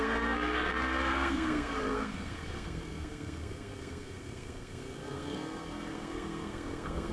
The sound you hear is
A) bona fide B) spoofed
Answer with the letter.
B